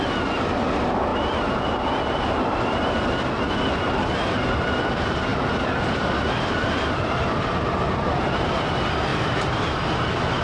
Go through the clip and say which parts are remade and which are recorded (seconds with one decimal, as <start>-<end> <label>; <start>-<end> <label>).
0.0-1.1 recorded; 1.1-2.9 remade; 2.9-5.3 recorded; 5.3-8.2 remade; 8.2-9.1 recorded; 9.1-9.6 remade; 9.6-10.4 recorded